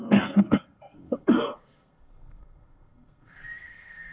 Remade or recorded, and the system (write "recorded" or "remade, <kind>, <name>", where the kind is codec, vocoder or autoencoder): remade, codec, SNAC